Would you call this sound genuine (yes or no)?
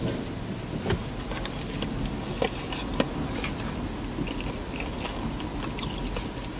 yes